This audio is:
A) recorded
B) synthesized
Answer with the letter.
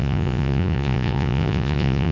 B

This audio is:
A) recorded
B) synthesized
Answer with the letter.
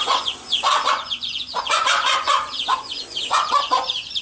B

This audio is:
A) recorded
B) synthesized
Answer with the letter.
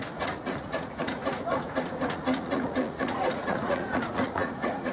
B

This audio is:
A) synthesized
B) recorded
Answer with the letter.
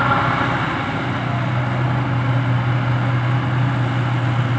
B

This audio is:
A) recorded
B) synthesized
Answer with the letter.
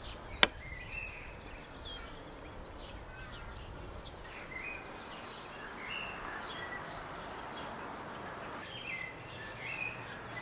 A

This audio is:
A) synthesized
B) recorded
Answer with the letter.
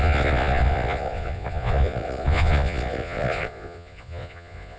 A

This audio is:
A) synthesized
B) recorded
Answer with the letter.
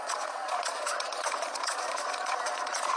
A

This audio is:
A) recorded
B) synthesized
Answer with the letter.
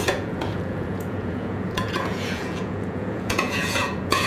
B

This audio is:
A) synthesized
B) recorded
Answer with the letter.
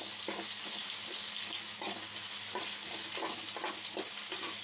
B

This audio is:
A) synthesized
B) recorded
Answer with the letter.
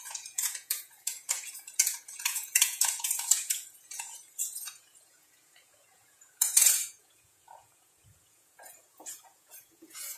A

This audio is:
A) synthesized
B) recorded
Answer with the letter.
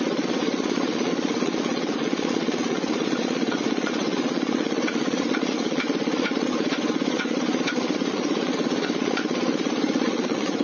A